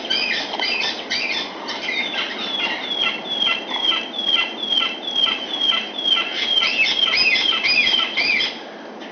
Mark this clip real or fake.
real